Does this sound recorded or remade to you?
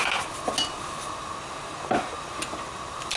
recorded